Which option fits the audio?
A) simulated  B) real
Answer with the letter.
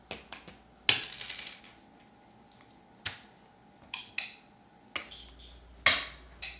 B